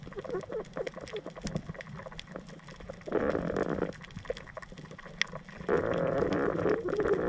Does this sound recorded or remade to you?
recorded